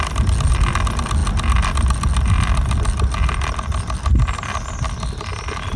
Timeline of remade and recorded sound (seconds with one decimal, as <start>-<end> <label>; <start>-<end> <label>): 0.0-5.8 recorded